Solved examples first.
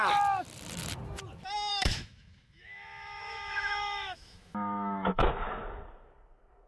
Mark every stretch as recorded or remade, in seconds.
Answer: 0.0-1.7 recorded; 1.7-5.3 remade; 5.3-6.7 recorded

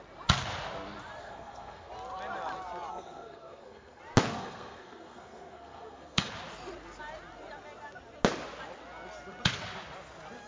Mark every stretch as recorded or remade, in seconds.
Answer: 0.0-1.2 recorded; 1.2-1.9 remade; 1.9-2.9 recorded; 2.9-4.0 remade; 4.0-4.4 recorded; 4.4-6.3 remade; 6.3-10.5 recorded

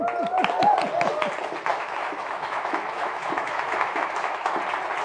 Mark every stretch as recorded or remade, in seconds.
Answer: 0.0-1.7 recorded; 1.7-4.6 remade; 4.6-5.0 recorded

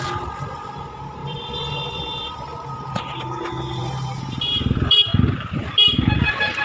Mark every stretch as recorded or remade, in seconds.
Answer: 0.0-1.2 recorded; 1.2-2.0 remade; 2.0-6.6 recorded

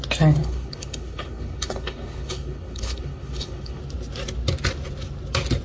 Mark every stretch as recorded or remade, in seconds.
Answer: 0.0-0.4 recorded; 0.4-3.8 remade; 3.8-5.6 recorded

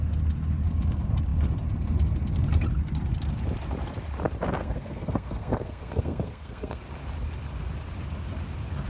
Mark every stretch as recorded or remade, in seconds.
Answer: 0.0-4.6 recorded; 4.6-6.8 remade; 6.8-8.9 recorded